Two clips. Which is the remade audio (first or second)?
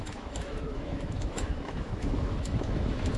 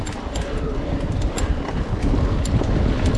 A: first